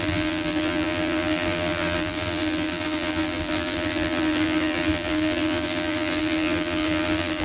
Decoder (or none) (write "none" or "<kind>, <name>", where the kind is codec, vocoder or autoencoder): vocoder, BigVGAN v2